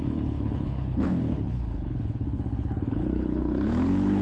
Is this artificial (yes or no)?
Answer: yes